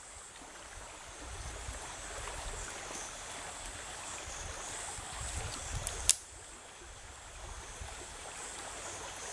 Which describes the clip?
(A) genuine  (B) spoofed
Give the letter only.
A